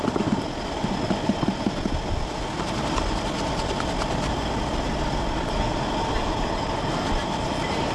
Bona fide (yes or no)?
yes